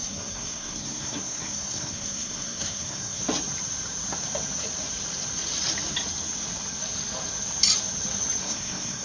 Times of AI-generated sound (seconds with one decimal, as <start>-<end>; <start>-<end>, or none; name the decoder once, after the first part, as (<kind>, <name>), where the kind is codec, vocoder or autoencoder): 0.0-3.2 (codec, SNAC); 8.4-9.0